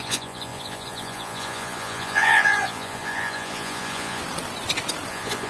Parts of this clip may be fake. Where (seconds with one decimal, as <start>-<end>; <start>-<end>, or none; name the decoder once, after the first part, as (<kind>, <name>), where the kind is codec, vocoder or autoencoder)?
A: 0.0-4.2 (vocoder, Vocos); 5.1-5.5